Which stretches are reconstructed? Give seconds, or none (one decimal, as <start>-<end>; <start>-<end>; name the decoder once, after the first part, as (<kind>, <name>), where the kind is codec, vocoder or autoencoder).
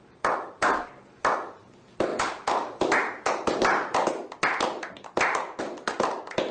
none